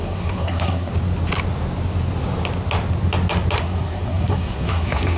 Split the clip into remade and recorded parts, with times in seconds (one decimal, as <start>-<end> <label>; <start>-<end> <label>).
0.0-0.9 remade; 0.9-3.6 recorded; 3.6-5.2 remade